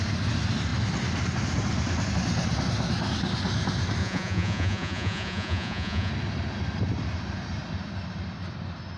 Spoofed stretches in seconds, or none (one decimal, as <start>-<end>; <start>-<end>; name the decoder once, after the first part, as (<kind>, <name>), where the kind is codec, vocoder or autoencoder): 4.0-6.1 (vocoder, Vocos)